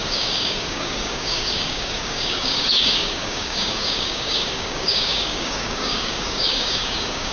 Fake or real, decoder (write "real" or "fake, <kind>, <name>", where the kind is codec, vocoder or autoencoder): fake, codec, DAC